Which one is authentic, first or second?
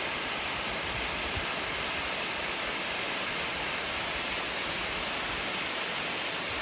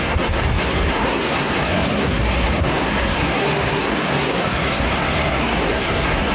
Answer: first